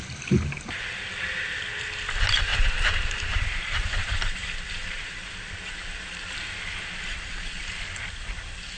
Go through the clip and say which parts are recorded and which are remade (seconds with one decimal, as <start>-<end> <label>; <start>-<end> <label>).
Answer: 0.0-2.5 recorded; 2.5-5.0 remade; 5.0-8.8 recorded